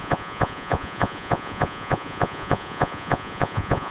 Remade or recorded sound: remade